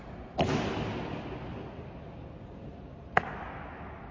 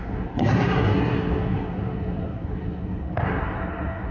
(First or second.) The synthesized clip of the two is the second